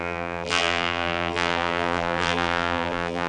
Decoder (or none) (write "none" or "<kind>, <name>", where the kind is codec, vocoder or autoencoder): vocoder, BigVGAN v2